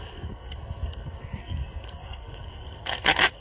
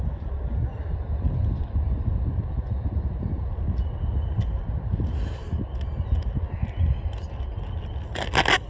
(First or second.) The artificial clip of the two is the first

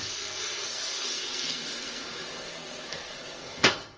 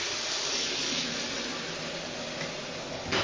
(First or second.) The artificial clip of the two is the first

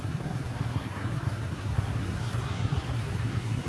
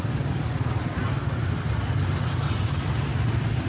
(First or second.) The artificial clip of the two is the first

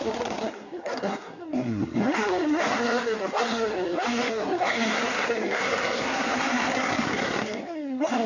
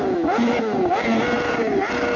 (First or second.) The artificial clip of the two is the first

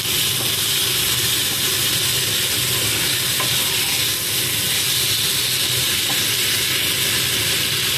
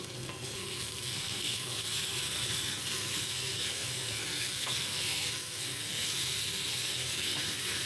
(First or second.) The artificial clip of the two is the second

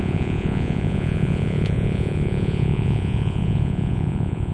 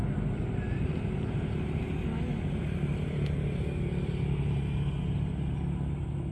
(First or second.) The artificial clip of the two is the first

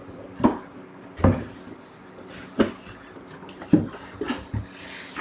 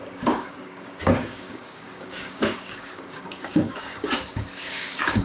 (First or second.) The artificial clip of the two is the second